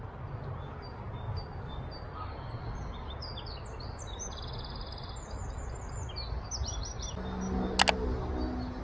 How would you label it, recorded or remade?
recorded